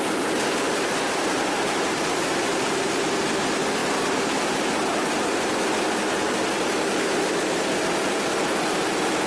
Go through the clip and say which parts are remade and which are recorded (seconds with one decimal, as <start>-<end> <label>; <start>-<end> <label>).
0.0-1.3 recorded; 1.3-3.0 remade; 3.0-3.8 recorded; 3.8-4.6 remade; 4.6-9.3 recorded